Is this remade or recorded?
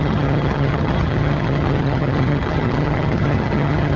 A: remade